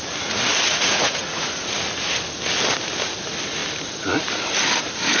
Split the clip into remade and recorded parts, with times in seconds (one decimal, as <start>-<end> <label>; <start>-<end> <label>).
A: 0.0-0.7 recorded; 0.7-1.5 remade; 1.5-5.2 recorded